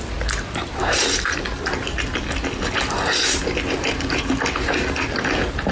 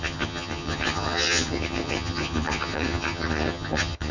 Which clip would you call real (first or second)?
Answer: first